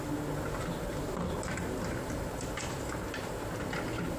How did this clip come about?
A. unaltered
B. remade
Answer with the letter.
A